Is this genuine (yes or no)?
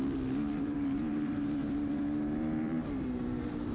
no